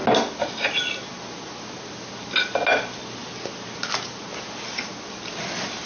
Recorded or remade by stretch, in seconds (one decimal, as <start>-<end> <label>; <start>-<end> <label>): 0.0-5.9 recorded